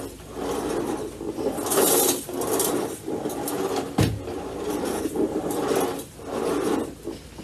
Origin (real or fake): real